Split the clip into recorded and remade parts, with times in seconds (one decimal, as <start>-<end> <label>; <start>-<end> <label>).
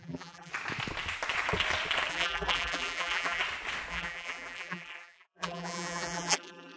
0.0-0.5 remade; 0.5-2.1 recorded; 2.1-3.4 remade; 3.4-3.9 recorded; 3.9-6.8 remade